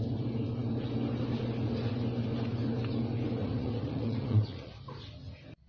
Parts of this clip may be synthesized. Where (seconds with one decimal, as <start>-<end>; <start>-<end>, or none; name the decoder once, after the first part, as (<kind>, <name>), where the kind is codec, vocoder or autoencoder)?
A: 3.4-4.7 (vocoder, Vocos)